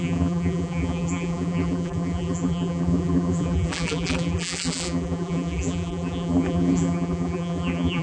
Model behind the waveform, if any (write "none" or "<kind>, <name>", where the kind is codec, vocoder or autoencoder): vocoder, BigVGAN v2